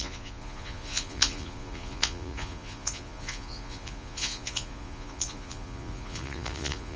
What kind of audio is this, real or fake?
fake